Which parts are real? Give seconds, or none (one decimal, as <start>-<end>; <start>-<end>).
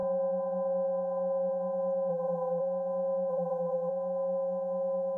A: 0.0-2.1; 2.6-3.3; 3.9-5.2